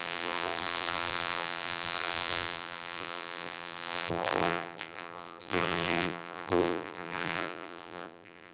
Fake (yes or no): yes